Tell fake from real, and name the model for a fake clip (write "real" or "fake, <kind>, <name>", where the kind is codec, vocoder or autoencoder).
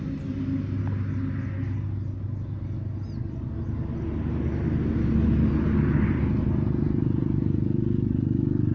real